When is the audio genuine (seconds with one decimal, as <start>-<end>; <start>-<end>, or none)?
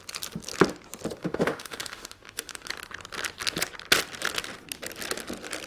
0.0-1.2; 2.7-5.7